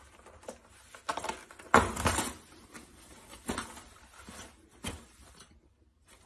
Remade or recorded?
recorded